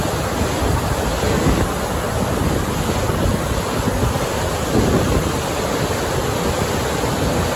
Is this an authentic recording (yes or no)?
yes